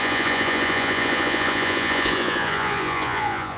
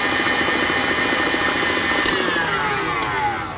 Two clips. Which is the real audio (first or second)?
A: second